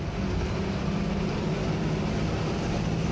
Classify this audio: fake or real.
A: real